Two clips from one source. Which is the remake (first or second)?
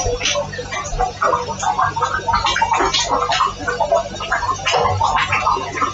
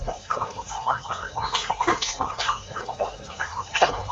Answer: second